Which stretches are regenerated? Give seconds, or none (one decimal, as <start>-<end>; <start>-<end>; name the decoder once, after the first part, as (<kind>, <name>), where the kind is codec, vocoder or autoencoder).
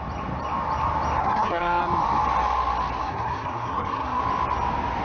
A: 1.2-1.8 (codec, SNAC); 3.0-4.2